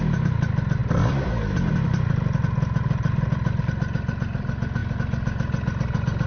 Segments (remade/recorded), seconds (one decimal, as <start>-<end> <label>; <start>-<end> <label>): 0.0-0.8 recorded; 0.8-1.3 remade; 1.3-6.3 recorded